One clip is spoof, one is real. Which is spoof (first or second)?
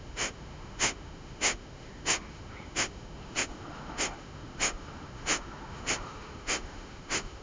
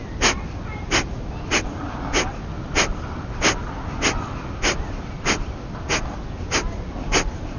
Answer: first